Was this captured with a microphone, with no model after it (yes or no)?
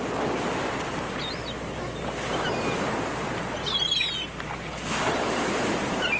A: yes